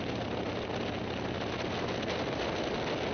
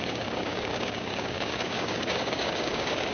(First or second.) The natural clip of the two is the first